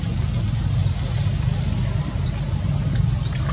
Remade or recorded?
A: recorded